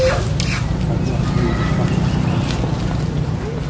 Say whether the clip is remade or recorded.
recorded